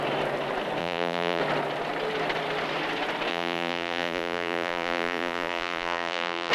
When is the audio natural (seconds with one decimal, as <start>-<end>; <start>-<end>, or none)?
0.0-0.8; 1.4-3.3